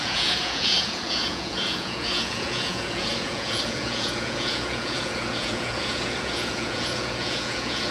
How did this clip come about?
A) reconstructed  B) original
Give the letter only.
A